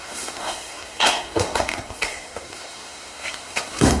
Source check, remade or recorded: remade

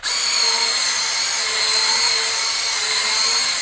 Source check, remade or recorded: recorded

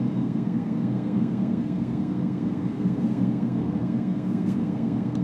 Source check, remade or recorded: remade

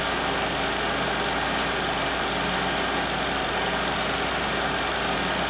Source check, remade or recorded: recorded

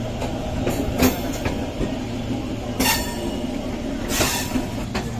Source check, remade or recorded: recorded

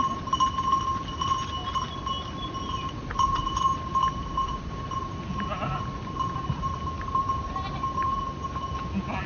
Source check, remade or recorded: recorded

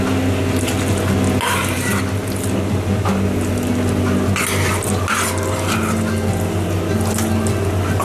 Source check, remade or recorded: recorded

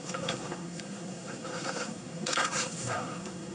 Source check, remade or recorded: remade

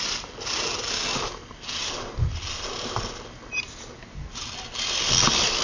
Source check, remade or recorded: recorded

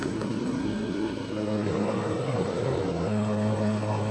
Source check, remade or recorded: remade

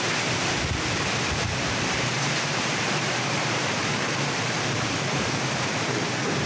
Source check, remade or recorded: remade